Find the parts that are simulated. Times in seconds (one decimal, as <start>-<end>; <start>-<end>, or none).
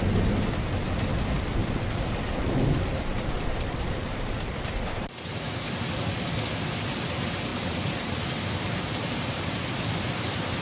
1.6-4.6; 7.5-8.1